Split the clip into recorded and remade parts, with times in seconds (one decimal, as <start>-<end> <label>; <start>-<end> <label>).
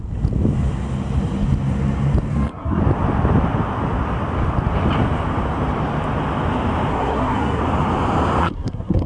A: 0.0-2.3 recorded; 2.3-2.8 remade; 2.8-6.9 recorded; 6.9-7.6 remade; 7.6-8.4 recorded; 8.4-9.1 remade